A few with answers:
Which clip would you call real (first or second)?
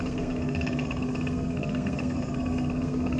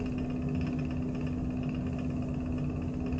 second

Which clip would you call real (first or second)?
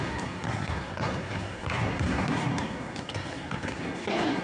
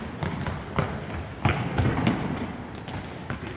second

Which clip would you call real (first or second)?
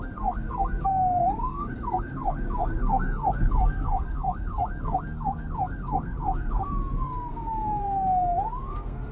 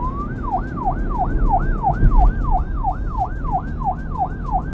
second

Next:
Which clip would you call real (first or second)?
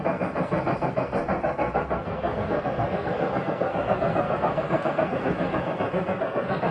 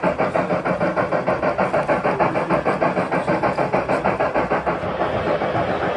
second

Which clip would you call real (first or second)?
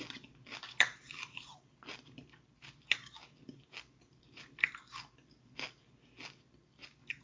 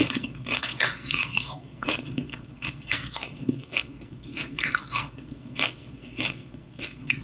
first